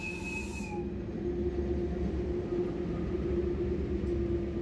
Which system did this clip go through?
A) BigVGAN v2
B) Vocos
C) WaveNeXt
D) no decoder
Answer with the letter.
D